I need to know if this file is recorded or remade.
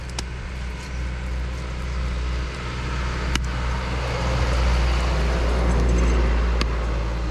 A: recorded